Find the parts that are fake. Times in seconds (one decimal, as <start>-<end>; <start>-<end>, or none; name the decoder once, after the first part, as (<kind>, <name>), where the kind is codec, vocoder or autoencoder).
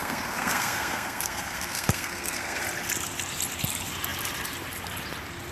0.0-2.6 (codec, SNAC)